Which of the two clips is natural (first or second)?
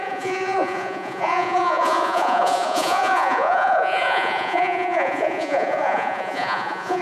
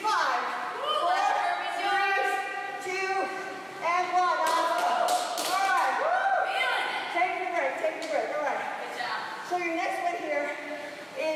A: second